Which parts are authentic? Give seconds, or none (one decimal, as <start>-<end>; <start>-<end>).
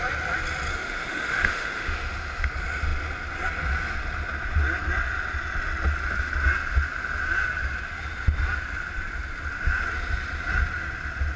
0.0-0.7; 2.5-11.4